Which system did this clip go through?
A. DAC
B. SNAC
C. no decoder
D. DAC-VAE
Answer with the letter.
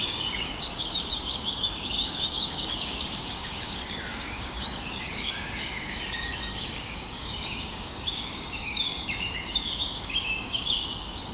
A